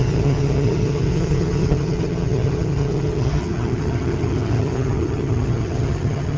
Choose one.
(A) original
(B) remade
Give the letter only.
B